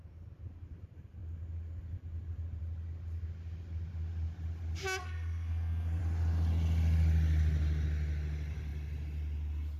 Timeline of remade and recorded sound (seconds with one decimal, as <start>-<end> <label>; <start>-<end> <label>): 0.0-5.0 recorded; 5.0-6.0 remade; 6.0-9.8 recorded